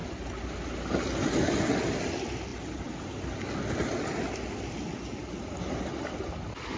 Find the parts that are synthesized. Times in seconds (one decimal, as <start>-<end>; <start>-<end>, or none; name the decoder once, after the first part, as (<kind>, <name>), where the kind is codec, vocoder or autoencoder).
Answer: none